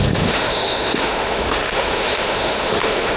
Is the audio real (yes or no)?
no